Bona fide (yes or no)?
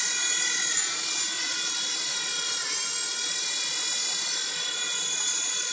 yes